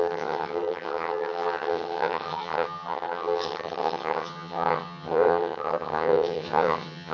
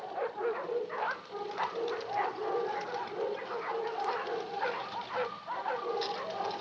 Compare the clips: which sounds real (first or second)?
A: second